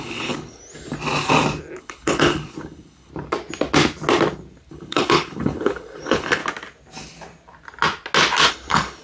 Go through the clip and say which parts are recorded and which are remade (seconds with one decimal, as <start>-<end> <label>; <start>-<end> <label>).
0.0-0.6 remade; 0.6-1.8 recorded; 1.8-3.1 remade; 3.1-4.7 recorded; 4.7-6.4 remade; 6.4-8.5 recorded; 8.5-9.0 remade